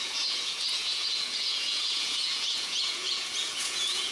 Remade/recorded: remade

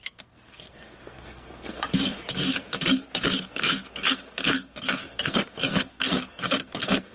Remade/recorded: remade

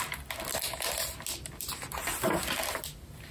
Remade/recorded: recorded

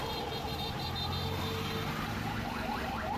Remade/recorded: recorded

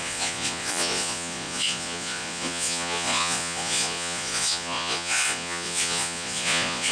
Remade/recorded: remade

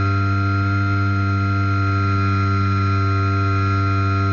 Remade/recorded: recorded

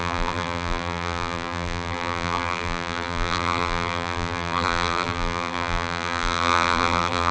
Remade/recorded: remade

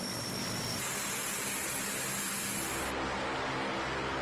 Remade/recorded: recorded